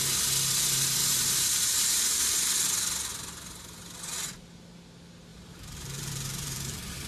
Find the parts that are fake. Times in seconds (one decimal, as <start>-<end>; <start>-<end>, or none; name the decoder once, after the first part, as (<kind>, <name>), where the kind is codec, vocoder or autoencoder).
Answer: 1.0-2.5 (vocoder, BigVGAN v2); 5.3-7.1